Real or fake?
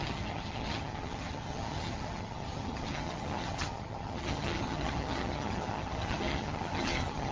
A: fake